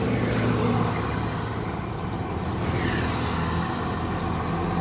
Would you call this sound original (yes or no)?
yes